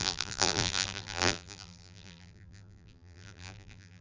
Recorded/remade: remade